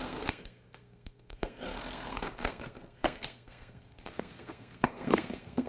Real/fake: fake